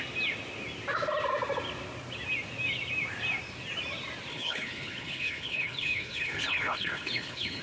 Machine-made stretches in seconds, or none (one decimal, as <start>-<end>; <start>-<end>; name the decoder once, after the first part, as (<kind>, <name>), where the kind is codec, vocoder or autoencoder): 4.3-7.6 (codec, HILCodec)

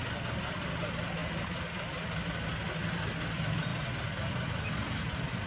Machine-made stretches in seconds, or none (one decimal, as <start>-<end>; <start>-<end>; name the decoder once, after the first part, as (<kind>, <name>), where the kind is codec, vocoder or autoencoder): none

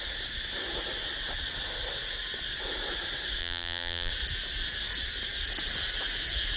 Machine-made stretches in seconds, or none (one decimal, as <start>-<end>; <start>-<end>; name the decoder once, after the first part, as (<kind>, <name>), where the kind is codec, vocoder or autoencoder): 3.4-4.1 (vocoder, BigVGAN v2)

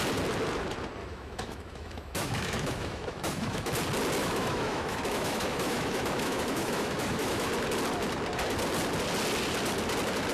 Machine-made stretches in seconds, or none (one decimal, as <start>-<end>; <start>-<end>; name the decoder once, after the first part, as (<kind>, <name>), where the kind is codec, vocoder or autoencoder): 1.0-3.7 (autoencoder, DAC-VAE); 4.2-7.5

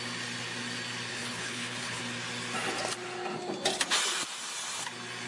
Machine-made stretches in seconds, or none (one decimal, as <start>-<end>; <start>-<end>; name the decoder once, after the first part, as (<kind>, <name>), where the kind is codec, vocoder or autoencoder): 1.1-2.0 (codec, HILCodec)

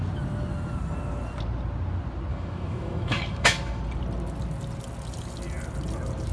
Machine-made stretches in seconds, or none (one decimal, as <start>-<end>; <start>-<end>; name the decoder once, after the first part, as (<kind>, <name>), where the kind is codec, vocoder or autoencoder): 2.3-3.8 (autoencoder, DAC-VAE)

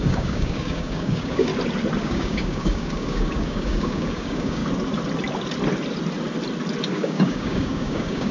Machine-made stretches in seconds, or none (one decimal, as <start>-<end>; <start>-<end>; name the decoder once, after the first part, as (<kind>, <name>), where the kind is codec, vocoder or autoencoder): 0.0-1.5 (codec, DAC); 2.0-4.6; 6.9-8.3